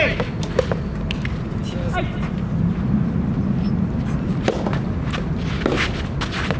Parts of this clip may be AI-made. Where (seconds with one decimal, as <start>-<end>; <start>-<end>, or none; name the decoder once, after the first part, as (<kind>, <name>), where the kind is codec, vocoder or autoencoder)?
none